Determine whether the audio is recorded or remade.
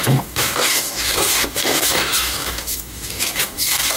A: remade